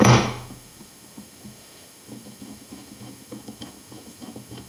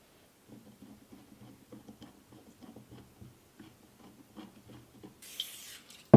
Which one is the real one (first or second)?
second